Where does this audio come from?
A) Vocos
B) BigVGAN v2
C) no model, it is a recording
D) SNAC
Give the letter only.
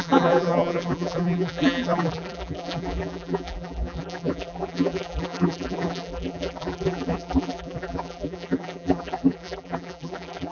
B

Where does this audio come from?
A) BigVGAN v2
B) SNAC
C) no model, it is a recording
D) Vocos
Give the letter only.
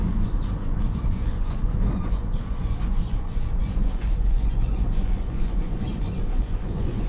D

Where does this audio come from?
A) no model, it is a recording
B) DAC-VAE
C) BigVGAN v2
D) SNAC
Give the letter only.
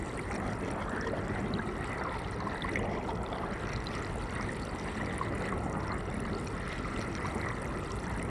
A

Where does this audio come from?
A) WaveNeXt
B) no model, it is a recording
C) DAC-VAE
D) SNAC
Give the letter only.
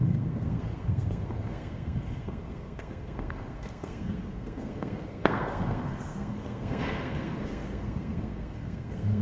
D